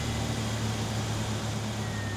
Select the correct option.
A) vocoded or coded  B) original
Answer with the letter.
B